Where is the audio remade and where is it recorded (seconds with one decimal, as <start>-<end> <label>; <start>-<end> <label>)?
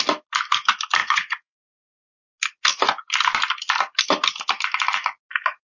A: 0.0-1.0 recorded; 1.0-2.1 remade; 2.1-5.7 recorded